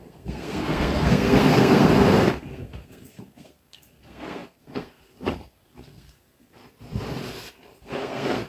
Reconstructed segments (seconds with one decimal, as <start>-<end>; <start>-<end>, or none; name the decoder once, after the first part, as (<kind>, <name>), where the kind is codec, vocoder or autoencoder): 0.0-6.6 (codec, SNAC); 7.8-8.5